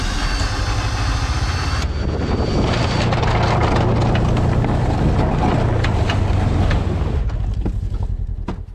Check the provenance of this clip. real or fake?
real